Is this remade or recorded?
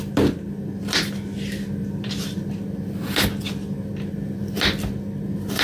recorded